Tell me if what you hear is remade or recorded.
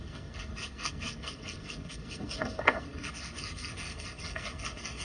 remade